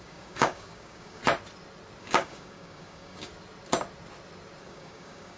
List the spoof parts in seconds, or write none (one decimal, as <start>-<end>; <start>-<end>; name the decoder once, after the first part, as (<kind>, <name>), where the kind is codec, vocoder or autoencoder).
0.0-1.2 (codec, DAC); 2.0-3.3; 4.6-5.4